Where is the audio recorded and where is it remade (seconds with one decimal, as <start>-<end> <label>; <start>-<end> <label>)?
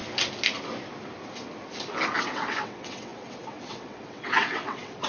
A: 0.0-2.2 recorded; 2.2-5.1 remade